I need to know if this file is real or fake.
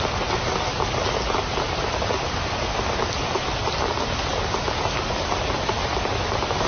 real